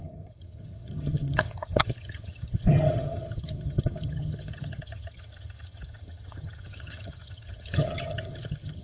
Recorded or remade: remade